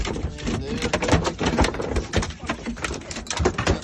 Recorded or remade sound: recorded